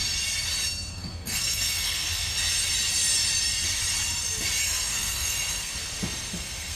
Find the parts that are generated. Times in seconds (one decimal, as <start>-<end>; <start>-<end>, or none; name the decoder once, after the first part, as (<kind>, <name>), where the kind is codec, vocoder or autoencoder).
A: 0.9-2.3 (codec, SNAC); 4.6-5.7; 6.3-6.8